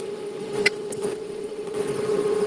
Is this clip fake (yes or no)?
yes